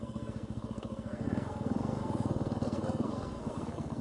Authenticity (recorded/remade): remade